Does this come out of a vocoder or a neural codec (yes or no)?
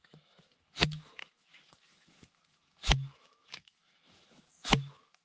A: yes